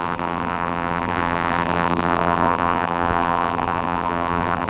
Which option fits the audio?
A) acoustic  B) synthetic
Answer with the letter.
B